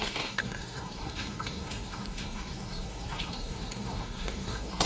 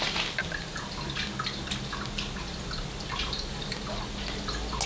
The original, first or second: second